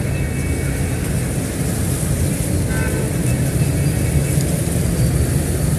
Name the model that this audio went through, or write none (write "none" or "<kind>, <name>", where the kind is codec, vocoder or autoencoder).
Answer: none